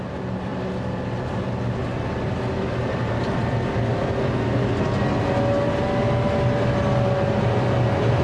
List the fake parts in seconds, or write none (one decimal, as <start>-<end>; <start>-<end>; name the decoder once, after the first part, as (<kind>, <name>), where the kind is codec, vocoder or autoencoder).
none

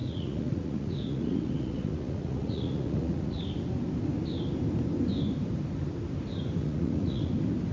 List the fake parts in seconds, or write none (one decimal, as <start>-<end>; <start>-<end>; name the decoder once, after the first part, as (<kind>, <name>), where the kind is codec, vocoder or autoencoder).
0.0-3.4 (vocoder, Vocos); 6.6-7.3

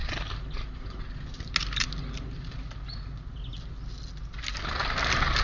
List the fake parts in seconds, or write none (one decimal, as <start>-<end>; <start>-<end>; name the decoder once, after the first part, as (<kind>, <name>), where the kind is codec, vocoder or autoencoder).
none

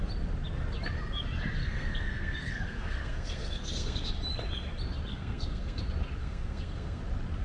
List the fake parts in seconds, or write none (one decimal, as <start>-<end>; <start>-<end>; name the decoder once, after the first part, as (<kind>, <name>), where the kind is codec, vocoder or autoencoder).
1.6-4.1 (codec, SNAC); 5.1-5.8; 6.2-7.0

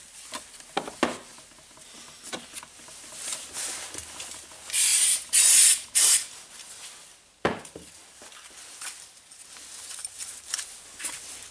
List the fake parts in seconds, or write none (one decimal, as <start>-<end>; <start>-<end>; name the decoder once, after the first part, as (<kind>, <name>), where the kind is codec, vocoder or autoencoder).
none

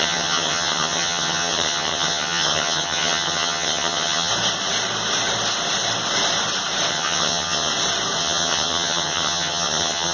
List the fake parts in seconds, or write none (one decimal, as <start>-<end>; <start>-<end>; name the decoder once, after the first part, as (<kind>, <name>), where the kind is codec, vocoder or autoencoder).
0.0-4.3 (vocoder, HiFi-GAN); 6.9-7.7; 8.2-10.1

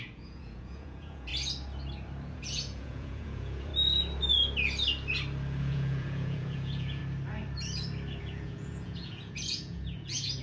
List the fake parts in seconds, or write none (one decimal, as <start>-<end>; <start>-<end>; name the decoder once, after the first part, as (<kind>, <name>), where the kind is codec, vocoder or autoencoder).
0.0-1.3 (vocoder, Vocos); 2.3-3.7; 5.6-7.0; 8.2-10.4